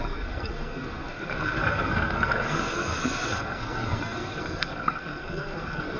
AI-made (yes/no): yes